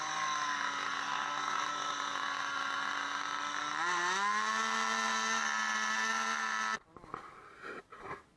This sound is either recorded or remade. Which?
recorded